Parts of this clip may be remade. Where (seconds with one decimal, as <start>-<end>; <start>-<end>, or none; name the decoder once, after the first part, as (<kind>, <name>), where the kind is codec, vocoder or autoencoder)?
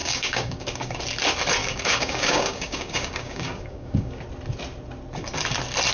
0.0-1.0 (codec, DAC); 1.6-4.2